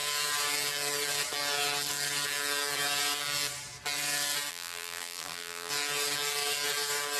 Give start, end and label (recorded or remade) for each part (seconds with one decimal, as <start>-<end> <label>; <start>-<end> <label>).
0.0-4.5 recorded; 4.5-5.7 remade; 5.7-7.2 recorded